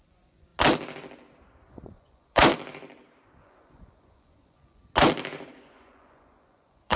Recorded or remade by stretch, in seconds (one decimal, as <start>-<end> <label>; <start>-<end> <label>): 0.0-0.5 remade; 0.5-1.7 recorded; 1.7-2.5 remade; 2.5-3.4 recorded; 3.4-4.8 remade; 4.8-5.5 recorded; 5.5-7.0 remade